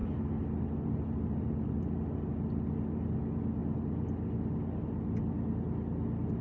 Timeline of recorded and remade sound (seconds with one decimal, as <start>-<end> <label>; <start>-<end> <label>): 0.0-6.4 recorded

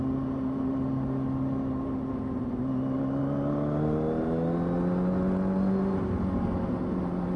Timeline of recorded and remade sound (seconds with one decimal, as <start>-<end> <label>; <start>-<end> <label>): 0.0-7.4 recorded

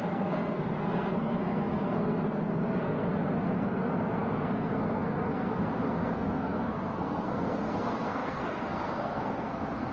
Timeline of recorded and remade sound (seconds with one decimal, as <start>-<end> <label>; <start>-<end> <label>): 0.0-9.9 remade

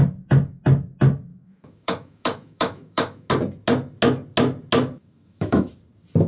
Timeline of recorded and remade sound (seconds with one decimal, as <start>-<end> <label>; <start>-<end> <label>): 0.0-1.3 recorded; 1.3-3.3 remade; 3.3-5.0 recorded; 5.0-5.7 remade; 5.7-6.3 recorded

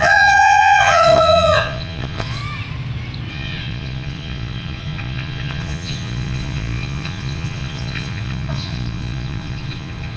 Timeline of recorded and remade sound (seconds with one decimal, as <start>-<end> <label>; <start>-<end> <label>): 0.0-2.4 remade; 2.4-3.3 recorded; 3.3-10.2 remade